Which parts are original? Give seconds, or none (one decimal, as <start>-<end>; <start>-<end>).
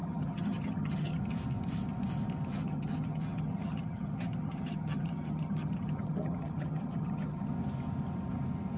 1.2-2.5; 7.5-8.8